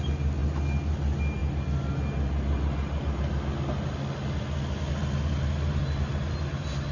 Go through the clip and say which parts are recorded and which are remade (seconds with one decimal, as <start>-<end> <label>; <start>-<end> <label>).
0.0-6.9 recorded